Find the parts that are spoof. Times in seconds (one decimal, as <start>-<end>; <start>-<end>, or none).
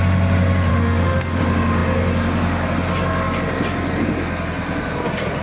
0.7-1.4